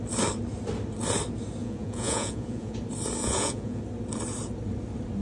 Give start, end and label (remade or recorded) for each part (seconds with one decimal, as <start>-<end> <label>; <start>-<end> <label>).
0.0-1.6 recorded; 1.6-2.8 remade; 2.8-3.2 recorded; 3.2-3.8 remade; 3.8-5.2 recorded